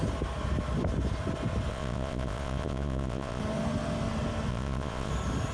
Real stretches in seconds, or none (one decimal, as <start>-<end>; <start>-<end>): 0.0-1.7; 3.4-4.5; 5.1-5.5